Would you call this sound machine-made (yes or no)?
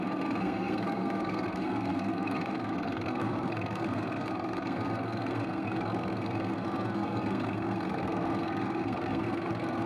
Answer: yes